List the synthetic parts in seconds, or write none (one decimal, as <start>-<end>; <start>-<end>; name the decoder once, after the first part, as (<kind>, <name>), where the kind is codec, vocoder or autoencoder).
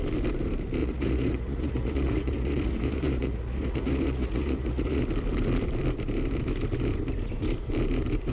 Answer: 0.8-5.0 (vocoder, Vocos)